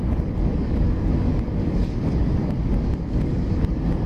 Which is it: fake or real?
fake